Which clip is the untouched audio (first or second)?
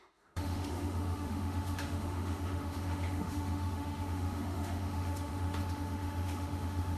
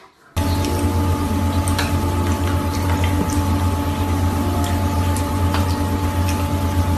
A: second